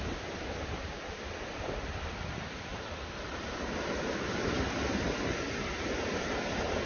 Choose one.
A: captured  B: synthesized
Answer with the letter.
B